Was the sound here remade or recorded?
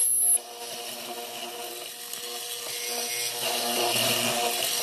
recorded